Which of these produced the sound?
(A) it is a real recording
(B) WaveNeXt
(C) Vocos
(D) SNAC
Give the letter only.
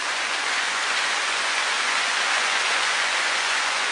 C